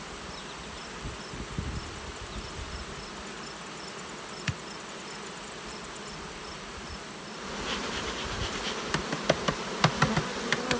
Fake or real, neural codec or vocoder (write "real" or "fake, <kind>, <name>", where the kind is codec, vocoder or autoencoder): real